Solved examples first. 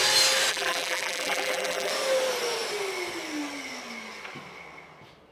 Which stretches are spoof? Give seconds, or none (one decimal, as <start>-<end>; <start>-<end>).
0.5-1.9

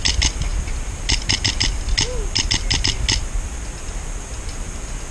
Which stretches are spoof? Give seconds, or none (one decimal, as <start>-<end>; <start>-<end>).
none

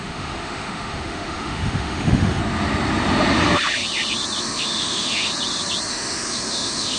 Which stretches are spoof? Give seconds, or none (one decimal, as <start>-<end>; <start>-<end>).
0.0-2.4; 4.4-5.3; 5.9-7.0